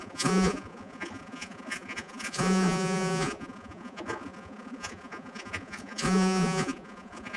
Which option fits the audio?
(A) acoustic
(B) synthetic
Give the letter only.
B